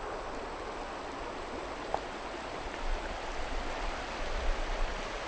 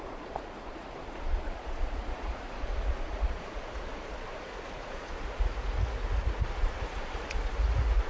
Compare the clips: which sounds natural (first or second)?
first